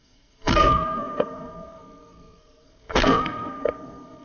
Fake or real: fake